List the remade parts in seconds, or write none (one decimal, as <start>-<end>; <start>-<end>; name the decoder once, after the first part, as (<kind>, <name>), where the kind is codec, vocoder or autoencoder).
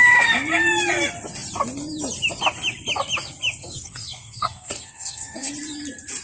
3.6-5.5 (codec, SNAC)